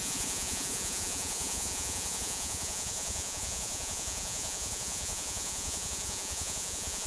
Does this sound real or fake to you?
fake